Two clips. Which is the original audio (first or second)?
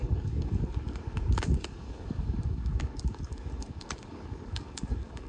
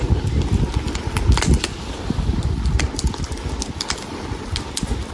second